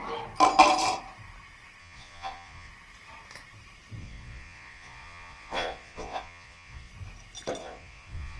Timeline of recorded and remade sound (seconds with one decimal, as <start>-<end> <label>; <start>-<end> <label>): 0.0-1.8 recorded; 1.8-2.7 remade; 2.7-4.0 recorded; 4.0-6.9 remade; 6.9-7.6 recorded; 7.6-8.4 remade